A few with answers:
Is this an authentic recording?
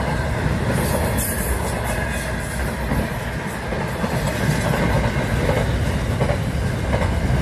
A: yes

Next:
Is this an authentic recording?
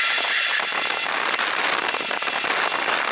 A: yes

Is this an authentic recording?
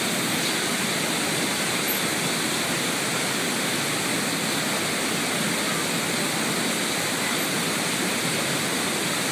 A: yes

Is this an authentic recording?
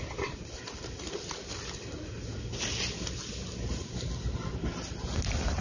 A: yes